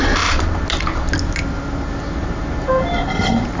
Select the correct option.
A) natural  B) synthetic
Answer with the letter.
A